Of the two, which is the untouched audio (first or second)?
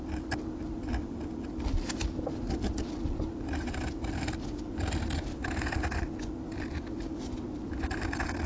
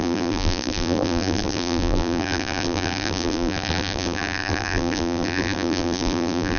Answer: first